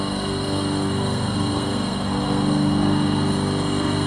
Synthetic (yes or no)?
yes